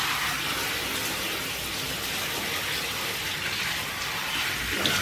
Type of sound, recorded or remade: recorded